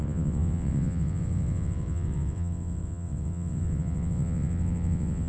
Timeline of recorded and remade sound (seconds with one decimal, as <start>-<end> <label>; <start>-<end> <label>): 0.0-5.3 remade